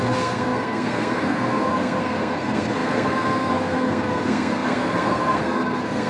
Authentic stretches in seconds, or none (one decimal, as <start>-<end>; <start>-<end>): none

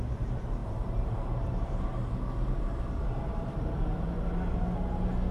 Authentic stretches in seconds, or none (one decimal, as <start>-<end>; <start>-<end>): 0.0-0.6; 3.8-5.3

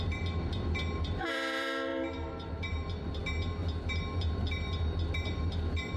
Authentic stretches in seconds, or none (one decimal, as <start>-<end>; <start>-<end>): 3.2-4.4

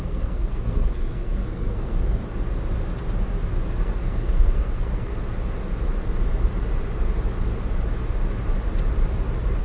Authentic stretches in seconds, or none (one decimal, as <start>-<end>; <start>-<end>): 2.2-3.8; 5.1-9.6

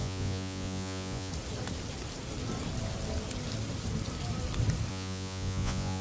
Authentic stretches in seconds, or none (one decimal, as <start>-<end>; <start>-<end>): 1.3-4.9

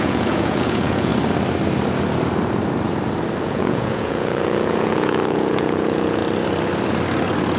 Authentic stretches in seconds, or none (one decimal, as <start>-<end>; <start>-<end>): 1.1-3.4; 6.2-7.6

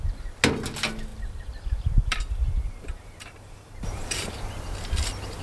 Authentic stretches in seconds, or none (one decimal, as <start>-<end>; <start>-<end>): 0.0-1.1; 4.3-5.4

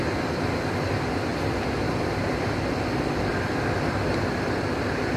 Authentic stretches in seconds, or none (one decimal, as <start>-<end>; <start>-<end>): 0.0-5.2